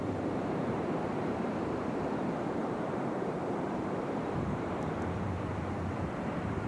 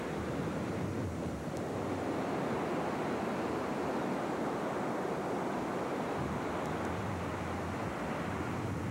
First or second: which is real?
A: second